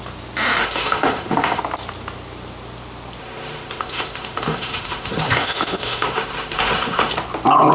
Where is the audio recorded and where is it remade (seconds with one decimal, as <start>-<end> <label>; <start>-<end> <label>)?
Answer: 0.0-0.6 recorded; 0.6-1.6 remade; 1.6-3.2 recorded; 3.2-7.1 remade; 7.1-7.7 recorded